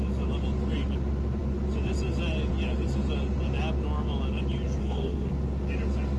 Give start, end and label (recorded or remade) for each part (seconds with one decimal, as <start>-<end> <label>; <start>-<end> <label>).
0.0-4.8 recorded; 4.8-5.3 remade; 5.3-6.2 recorded